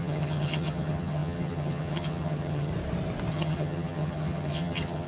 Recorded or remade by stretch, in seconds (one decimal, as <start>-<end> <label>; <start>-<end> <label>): 0.0-2.7 remade; 2.7-3.3 recorded; 3.3-5.1 remade